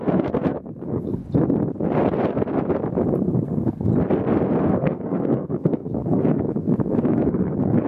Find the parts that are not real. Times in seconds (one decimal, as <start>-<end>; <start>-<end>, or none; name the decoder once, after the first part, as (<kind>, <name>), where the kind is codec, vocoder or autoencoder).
0.0-1.2 (codec, SNAC); 3.1-3.9; 4.6-7.9